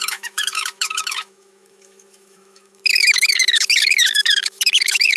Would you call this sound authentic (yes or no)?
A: no